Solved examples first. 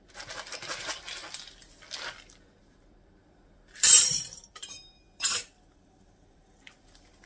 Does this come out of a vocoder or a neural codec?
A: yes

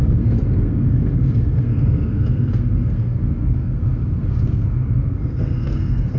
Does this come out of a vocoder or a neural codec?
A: yes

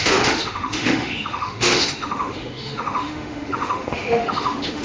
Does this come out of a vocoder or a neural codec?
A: yes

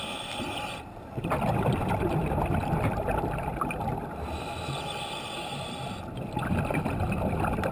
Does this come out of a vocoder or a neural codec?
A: yes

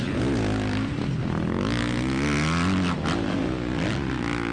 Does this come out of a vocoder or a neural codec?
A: no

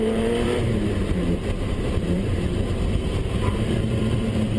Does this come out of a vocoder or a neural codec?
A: yes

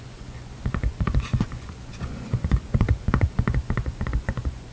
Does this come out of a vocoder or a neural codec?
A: yes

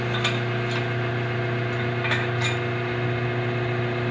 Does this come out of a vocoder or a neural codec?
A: no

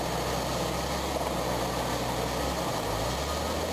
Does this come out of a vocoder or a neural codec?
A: no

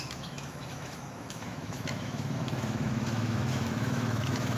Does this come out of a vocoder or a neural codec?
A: yes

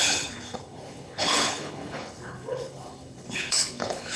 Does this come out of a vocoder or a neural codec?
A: yes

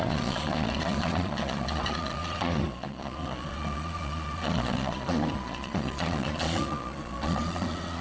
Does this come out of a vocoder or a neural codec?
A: yes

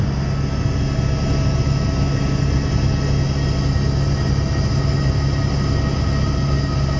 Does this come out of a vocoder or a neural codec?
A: no